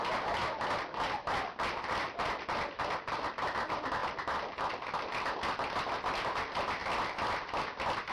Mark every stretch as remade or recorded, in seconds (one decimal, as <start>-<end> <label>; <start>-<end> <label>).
0.0-8.1 recorded